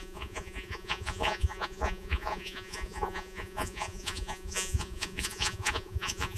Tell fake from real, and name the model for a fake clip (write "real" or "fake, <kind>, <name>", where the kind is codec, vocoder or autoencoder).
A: fake, vocoder, Vocos